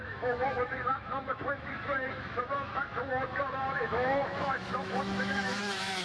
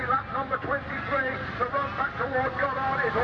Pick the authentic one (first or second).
second